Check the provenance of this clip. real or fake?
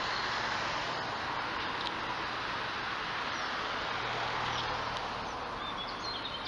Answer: real